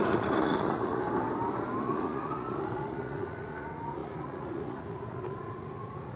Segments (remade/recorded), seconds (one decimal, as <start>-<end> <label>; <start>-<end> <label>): 0.0-1.0 remade; 1.0-1.8 recorded; 1.8-6.2 remade